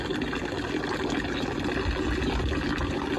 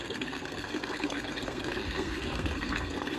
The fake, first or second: second